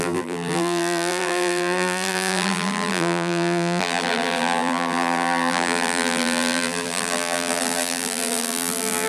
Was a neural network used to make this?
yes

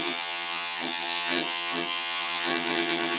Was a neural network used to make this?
yes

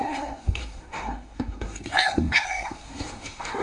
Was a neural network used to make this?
yes